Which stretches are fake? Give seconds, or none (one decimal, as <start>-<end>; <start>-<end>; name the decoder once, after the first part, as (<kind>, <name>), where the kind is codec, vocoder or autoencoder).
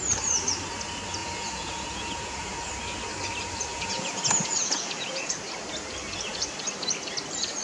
1.2-2.7 (vocoder, Vocos); 3.7-5.3